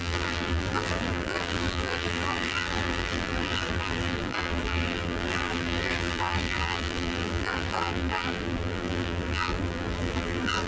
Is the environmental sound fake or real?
fake